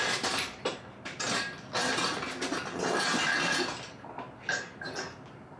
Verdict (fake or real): real